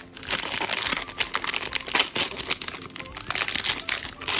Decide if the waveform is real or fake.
real